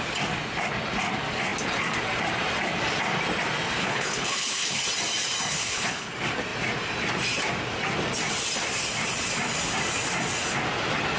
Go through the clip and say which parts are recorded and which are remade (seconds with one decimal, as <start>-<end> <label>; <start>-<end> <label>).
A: 0.0-3.8 recorded; 3.8-4.8 remade; 4.8-5.5 recorded; 5.5-6.1 remade; 6.1-11.2 recorded